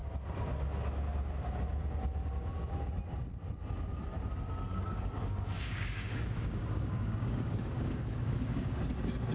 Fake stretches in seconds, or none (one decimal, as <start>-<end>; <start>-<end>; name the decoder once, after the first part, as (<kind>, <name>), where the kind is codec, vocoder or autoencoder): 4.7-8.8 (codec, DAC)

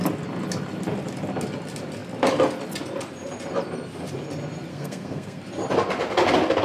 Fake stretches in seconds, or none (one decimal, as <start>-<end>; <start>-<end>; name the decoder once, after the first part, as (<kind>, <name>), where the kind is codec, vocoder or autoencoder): 4.7-5.4 (codec, SNAC)

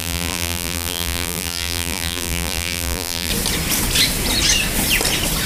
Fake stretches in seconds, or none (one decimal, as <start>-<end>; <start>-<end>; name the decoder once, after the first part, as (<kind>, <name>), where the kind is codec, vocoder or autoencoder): 0.0-3.3 (vocoder, BigVGAN v2)